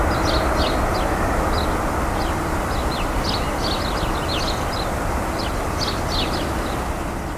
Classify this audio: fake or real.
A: real